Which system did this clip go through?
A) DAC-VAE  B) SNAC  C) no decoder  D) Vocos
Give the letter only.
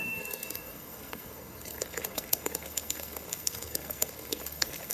B